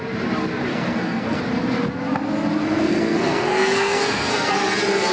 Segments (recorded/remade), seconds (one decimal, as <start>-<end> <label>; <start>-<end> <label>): 0.0-0.7 recorded; 0.7-1.4 remade; 1.4-2.6 recorded; 2.6-4.5 remade; 4.5-5.1 recorded

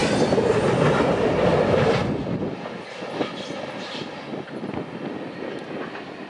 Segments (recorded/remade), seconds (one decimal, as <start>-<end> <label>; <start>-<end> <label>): 0.0-6.3 recorded

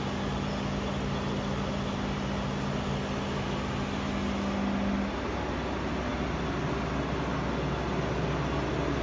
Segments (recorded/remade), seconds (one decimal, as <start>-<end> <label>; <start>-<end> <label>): 0.0-9.0 recorded

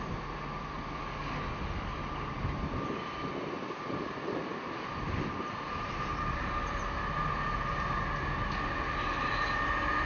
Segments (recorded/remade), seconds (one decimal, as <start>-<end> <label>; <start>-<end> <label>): 0.0-4.0 recorded; 4.0-6.8 remade; 6.8-10.1 recorded

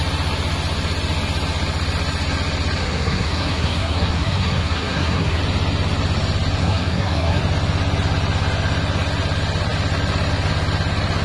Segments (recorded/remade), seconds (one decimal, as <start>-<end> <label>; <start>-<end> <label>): 0.0-2.8 recorded; 2.8-5.4 remade; 5.4-6.6 recorded; 6.6-7.4 remade; 7.4-11.2 recorded

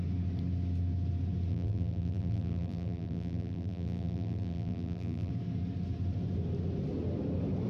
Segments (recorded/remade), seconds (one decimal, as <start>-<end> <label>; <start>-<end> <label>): 0.0-1.5 recorded; 1.5-5.3 remade; 5.3-7.7 recorded

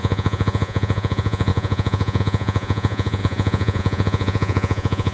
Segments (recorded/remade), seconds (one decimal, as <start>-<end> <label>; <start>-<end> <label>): 0.0-5.1 remade

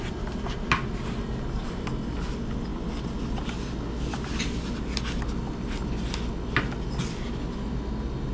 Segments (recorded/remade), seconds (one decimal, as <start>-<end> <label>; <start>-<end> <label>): 0.0-8.3 recorded